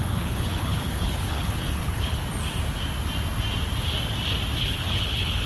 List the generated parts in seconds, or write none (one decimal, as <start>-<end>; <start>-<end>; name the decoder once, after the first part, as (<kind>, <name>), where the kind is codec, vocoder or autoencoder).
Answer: 0.0-2.2 (codec, HILCodec); 4.6-5.5